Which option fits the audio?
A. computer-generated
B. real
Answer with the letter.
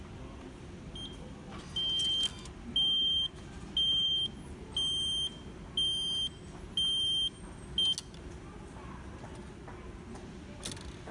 B